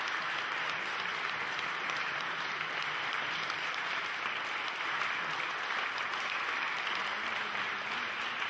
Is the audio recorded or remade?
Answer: recorded